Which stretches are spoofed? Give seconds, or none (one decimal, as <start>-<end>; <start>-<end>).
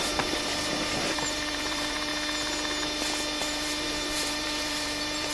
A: 0.0-2.1; 3.4-5.3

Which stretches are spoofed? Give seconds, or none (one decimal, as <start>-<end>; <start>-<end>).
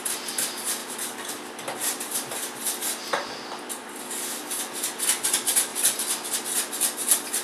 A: 0.8-2.0; 5.7-6.3